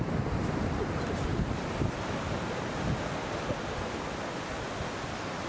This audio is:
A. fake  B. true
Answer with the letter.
B